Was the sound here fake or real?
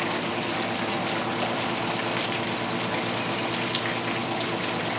real